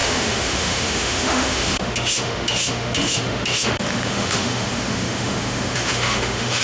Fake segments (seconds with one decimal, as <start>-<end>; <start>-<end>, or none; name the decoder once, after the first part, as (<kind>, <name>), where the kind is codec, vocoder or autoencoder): 0.0-6.6 (autoencoder, DAC-VAE)